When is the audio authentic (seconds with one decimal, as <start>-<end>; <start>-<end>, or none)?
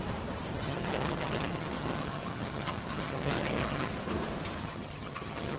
0.0-0.5; 3.9-4.6